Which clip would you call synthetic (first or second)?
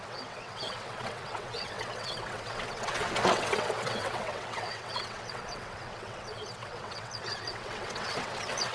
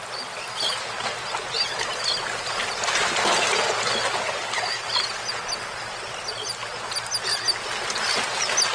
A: first